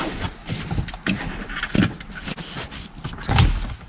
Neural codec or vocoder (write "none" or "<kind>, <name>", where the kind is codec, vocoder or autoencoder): none